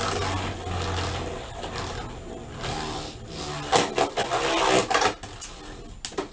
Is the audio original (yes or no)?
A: yes